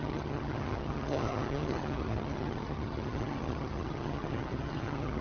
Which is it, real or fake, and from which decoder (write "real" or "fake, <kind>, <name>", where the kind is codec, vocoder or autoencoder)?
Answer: fake, vocoder, HiFi-GAN